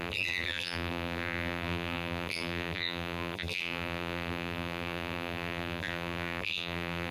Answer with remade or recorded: remade